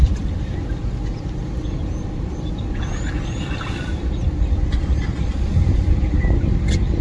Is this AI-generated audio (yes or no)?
yes